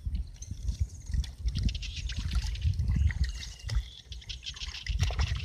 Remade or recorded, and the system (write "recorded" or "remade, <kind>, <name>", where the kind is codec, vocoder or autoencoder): remade, vocoder, BigVGAN v2